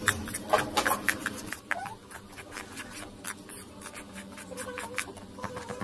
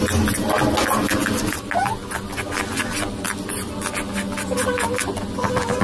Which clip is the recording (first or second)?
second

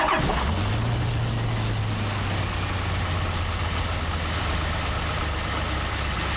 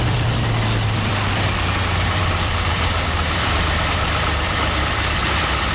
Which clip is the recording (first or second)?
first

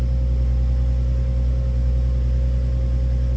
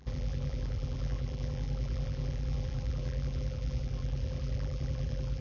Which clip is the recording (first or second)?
first